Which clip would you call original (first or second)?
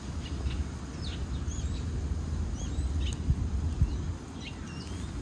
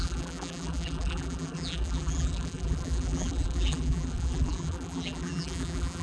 first